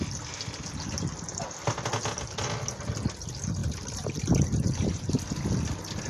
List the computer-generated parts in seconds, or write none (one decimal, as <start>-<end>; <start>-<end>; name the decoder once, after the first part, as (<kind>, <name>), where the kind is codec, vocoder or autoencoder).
3.6-5.0 (vocoder, BigVGAN v2)